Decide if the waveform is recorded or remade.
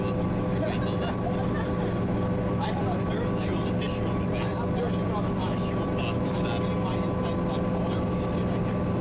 recorded